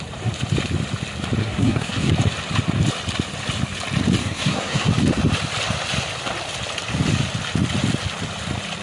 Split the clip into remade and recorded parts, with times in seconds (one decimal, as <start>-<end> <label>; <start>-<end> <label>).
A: 0.0-1.4 recorded; 1.4-2.1 remade; 2.1-4.2 recorded; 4.2-4.9 remade; 4.9-8.8 recorded